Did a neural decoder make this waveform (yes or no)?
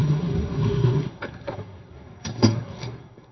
yes